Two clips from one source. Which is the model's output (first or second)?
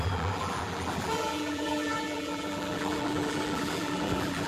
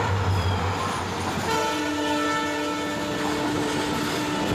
first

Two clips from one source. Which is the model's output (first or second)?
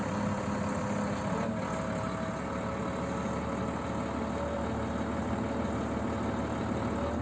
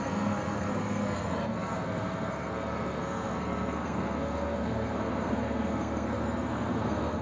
second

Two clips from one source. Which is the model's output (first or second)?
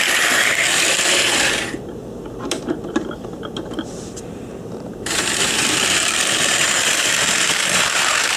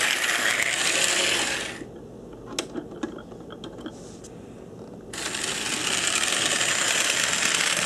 first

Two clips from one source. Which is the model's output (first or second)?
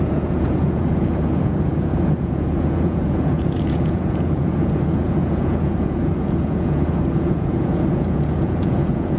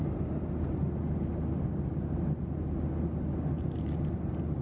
first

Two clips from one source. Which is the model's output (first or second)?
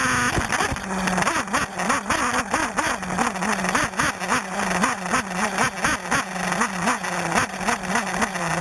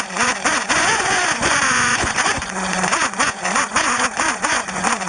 second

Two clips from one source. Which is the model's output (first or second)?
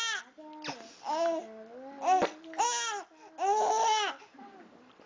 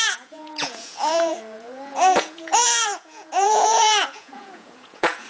second